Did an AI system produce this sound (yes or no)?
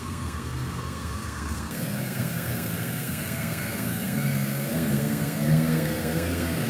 yes